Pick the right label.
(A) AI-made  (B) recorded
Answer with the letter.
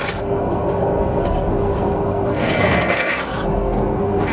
A